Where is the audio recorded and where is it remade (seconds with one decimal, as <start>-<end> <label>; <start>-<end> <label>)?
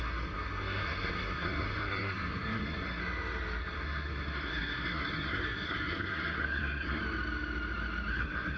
0.0-3.0 remade; 3.0-3.6 recorded; 3.6-7.0 remade; 7.0-8.1 recorded; 8.1-8.6 remade